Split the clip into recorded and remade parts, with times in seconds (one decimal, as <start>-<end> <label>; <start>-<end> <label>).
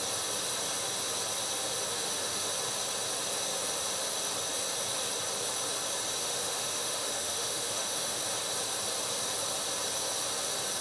0.0-1.9 recorded; 1.9-2.5 remade; 2.5-6.2 recorded; 6.2-8.2 remade; 8.2-10.8 recorded